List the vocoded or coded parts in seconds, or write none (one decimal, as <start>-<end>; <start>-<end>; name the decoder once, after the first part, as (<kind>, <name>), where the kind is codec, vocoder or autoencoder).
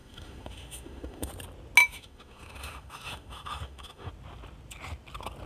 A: 0.0-1.3 (autoencoder, DAC-VAE); 1.8-4.1